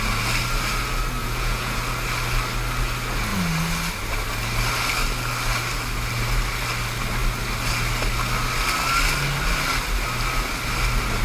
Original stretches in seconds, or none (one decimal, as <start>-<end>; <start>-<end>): 0.0-1.2; 1.8-11.2